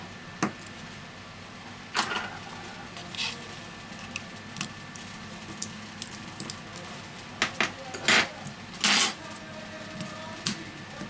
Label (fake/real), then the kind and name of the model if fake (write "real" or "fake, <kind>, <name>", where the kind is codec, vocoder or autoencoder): real